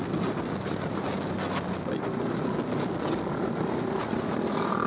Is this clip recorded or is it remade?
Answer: recorded